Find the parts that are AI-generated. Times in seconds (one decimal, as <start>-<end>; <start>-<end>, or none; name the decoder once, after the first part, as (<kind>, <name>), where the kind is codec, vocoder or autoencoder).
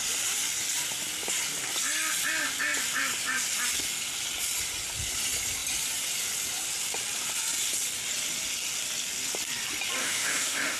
10.0-10.8 (autoencoder, DAC-VAE)